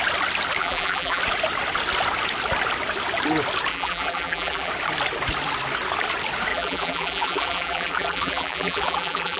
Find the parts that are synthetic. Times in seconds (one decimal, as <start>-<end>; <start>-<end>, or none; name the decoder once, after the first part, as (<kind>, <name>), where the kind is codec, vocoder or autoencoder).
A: 0.6-1.2 (vocoder, BigVGAN v2); 3.7-4.7; 6.5-9.4